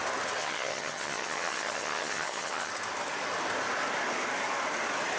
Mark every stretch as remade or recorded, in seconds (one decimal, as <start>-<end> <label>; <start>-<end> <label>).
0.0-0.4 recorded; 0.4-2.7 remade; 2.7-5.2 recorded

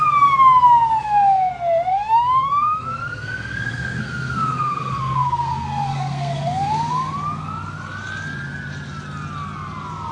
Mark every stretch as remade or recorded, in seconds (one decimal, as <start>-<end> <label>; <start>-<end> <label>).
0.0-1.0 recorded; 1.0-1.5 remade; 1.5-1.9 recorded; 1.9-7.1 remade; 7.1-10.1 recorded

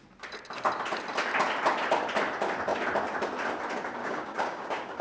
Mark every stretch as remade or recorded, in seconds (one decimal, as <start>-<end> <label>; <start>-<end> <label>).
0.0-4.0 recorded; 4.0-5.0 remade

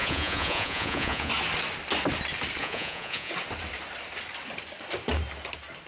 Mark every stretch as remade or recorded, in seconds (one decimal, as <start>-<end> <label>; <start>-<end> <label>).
0.0-1.3 remade; 1.3-2.6 recorded; 2.6-3.3 remade; 3.3-5.9 recorded

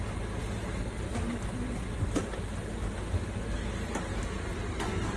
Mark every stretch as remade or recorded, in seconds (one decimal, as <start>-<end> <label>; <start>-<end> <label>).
0.0-5.2 recorded